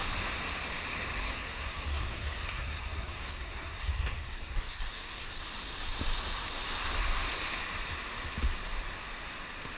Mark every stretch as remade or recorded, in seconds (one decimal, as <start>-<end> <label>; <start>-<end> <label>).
0.0-1.2 recorded; 1.2-5.4 remade; 5.4-9.8 recorded